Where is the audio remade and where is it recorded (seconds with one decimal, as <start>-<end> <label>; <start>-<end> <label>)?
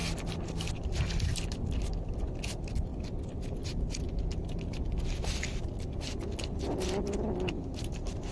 0.0-0.7 recorded; 0.7-2.9 remade; 2.9-7.5 recorded; 7.5-8.3 remade